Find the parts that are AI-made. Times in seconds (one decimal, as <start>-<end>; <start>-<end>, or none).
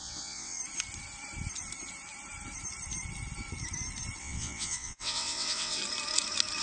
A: 0.0-0.6; 4.2-5.8